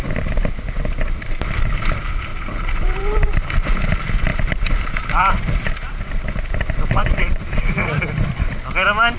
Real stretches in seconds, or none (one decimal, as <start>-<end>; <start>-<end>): 0.0-2.3; 3.8-4.3; 6.3-7.0; 8.0-9.2